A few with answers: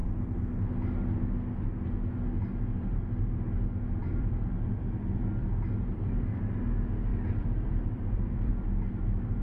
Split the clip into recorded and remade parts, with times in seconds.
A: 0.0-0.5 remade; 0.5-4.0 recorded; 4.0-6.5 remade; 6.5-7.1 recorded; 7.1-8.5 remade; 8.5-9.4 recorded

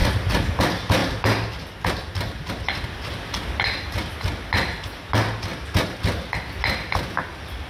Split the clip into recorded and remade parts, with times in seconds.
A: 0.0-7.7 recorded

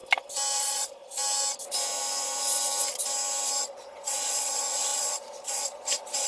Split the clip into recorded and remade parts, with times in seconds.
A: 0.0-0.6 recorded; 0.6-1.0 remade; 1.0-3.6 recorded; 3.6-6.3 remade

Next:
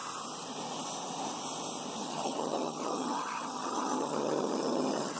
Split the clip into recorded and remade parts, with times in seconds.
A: 0.0-2.0 recorded; 2.0-5.2 remade

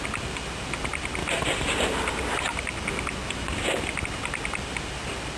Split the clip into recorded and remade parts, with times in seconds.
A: 0.0-5.4 recorded